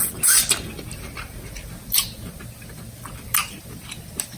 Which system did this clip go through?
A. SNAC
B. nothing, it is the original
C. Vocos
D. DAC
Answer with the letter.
B